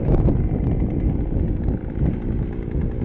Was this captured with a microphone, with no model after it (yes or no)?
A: yes